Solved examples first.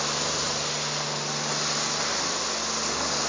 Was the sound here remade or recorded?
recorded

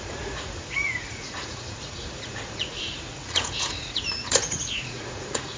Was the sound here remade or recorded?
remade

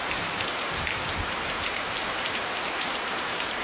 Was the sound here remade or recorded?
remade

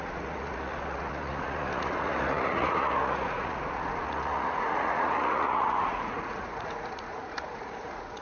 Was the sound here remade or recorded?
remade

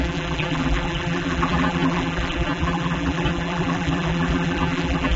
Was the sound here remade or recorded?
remade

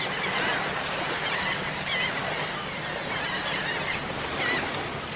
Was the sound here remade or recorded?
recorded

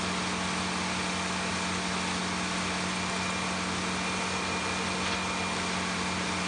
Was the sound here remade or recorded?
recorded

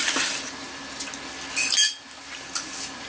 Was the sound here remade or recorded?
recorded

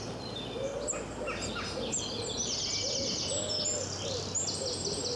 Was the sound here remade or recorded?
recorded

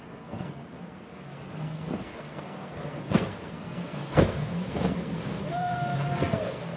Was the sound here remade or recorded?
remade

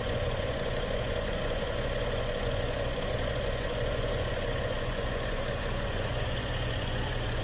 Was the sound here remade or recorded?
remade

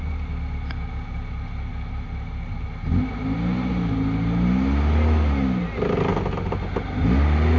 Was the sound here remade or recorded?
recorded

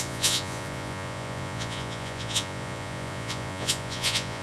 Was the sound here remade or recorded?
remade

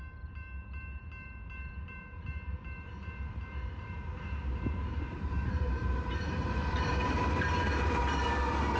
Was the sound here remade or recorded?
remade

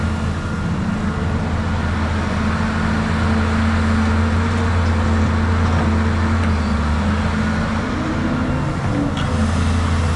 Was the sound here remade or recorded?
recorded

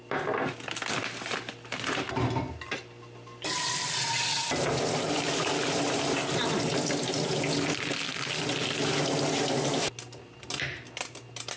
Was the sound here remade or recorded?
recorded